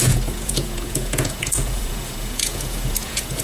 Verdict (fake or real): fake